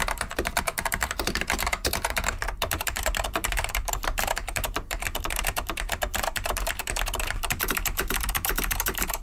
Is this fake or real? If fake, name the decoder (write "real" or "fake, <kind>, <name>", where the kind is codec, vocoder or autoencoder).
fake, vocoder, BigVGAN v2